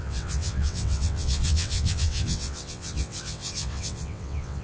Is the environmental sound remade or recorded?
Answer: remade